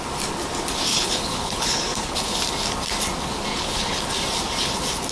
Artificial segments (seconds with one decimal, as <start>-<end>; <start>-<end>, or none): 0.9-2.4; 3.5-4.0